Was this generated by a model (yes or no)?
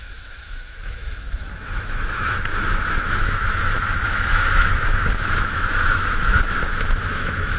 yes